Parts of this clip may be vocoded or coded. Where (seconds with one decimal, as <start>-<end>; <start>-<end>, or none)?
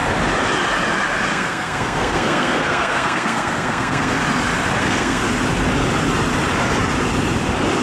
1.3-4.2; 4.8-5.2